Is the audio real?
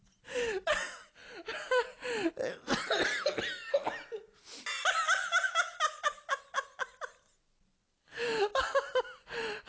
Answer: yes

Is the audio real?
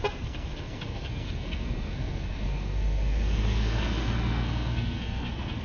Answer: no